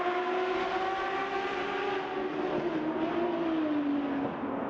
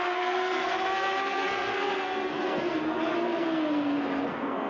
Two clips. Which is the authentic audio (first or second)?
first